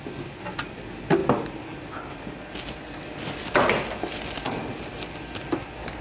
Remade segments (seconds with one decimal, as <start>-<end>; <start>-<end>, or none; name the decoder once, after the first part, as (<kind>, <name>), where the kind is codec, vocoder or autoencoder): none